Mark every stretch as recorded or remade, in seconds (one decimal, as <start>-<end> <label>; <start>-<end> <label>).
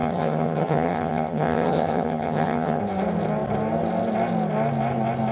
0.0-2.8 remade; 2.8-5.3 recorded